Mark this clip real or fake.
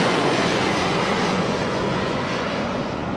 fake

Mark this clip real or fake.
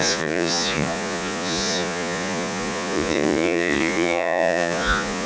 fake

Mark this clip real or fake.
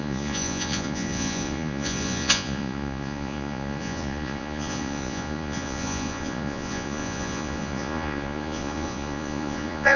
fake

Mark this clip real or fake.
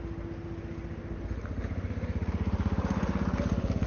real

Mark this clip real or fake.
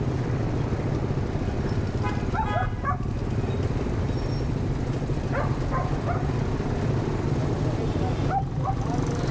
real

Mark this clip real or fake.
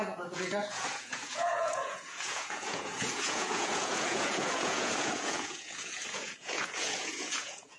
fake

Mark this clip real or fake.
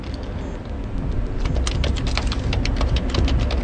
real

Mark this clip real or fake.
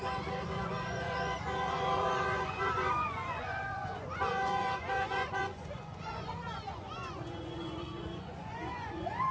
fake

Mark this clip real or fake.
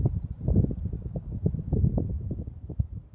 real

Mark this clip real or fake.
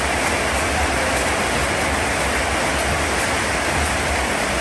real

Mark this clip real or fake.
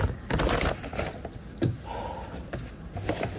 real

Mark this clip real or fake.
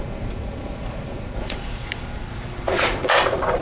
fake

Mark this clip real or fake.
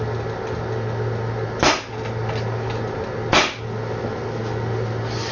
real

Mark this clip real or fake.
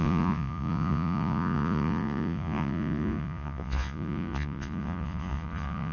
fake